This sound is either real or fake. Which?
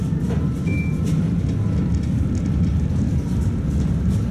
real